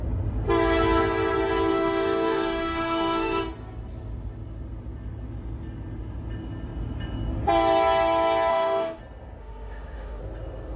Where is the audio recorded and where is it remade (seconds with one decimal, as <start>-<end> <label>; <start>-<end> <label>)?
0.0-1.7 recorded; 1.7-3.4 remade; 3.4-8.5 recorded; 8.5-9.0 remade; 9.0-9.4 recorded; 9.4-10.2 remade; 10.2-10.8 recorded